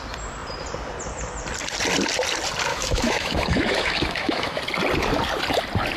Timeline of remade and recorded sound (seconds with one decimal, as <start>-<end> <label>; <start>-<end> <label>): 0.0-2.7 recorded; 2.7-4.6 remade; 4.6-6.0 recorded